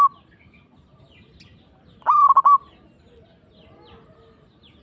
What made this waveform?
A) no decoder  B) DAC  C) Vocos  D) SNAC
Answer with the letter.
A